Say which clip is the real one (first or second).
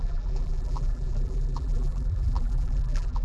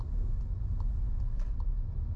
second